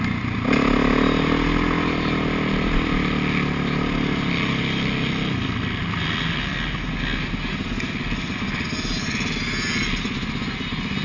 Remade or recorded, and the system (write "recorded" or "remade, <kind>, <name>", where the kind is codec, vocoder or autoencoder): recorded